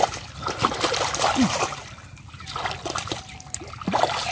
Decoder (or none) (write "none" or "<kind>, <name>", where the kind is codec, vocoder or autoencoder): none